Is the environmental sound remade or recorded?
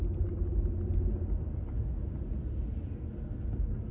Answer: recorded